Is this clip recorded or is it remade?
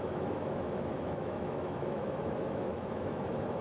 remade